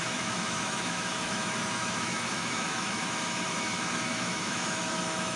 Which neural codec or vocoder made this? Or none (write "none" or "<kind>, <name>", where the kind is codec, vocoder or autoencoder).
autoencoder, DAC-VAE